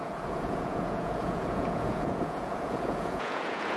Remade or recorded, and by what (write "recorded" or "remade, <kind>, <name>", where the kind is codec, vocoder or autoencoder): remade, vocoder, Vocos